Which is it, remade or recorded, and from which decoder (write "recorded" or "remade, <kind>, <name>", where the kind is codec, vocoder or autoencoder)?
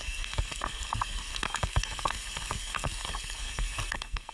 remade, codec, SNAC